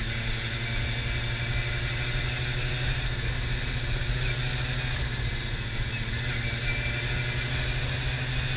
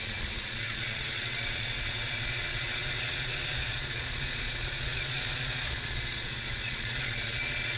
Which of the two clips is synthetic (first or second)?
second